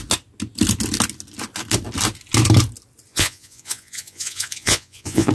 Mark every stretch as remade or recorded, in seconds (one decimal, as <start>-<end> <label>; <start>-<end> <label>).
0.0-3.1 recorded; 3.1-5.3 remade